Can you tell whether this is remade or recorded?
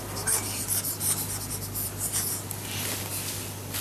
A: recorded